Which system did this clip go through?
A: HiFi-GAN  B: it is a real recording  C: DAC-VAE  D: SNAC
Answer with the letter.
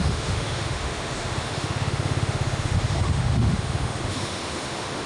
C